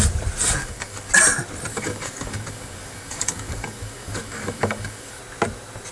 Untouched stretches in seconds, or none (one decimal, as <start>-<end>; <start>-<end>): 0.0-0.6; 1.1-1.7; 5.2-5.9